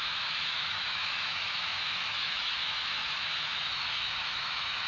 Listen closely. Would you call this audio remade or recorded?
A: remade